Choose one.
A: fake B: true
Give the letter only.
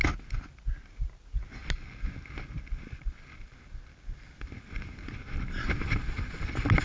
B